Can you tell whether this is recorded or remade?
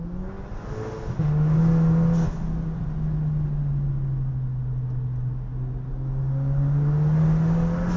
recorded